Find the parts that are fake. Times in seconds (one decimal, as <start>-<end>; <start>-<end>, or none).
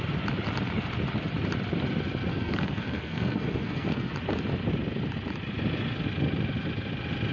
2.3-4.1